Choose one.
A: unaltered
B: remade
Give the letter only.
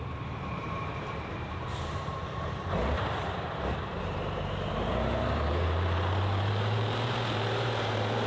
B